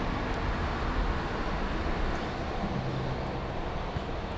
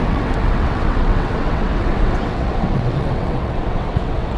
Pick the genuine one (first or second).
first